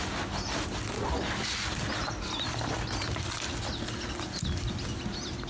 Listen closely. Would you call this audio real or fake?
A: real